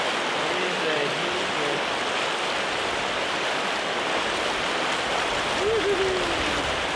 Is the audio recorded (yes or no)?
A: yes